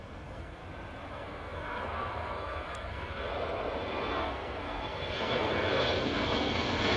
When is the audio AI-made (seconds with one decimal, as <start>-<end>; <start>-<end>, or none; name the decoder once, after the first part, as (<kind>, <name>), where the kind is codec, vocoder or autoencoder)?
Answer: 0.0-0.6 (codec, SNAC); 1.1-3.3; 4.2-7.0